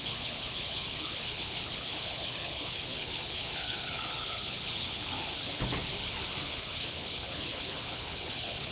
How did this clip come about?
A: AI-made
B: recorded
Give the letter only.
A